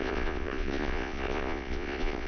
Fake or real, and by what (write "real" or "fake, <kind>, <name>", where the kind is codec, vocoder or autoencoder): fake, vocoder, Vocos